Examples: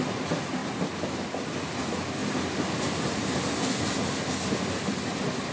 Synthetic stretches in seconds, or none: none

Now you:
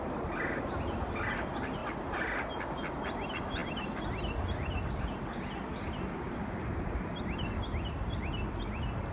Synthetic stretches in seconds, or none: none

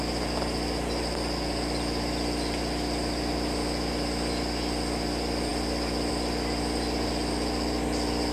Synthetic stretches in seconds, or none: none

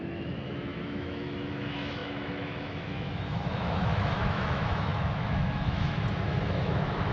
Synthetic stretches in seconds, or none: 0.0-7.1

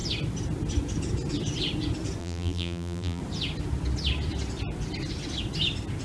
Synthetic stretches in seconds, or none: 2.2-3.2

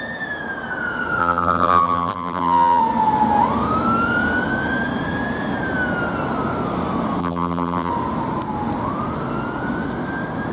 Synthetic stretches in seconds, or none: 1.2-2.8; 7.2-7.9

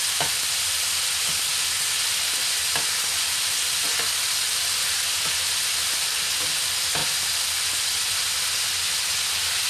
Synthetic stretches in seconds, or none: none